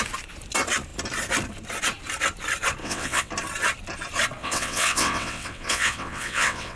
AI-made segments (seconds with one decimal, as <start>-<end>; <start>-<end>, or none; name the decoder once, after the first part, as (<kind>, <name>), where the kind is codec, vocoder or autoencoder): 2.8-3.3 (vocoder, WaveNeXt); 4.4-6.8